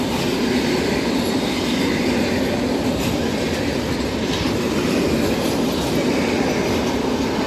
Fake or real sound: real